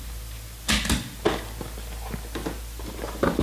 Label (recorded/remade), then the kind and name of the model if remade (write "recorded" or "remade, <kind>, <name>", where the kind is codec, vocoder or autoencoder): recorded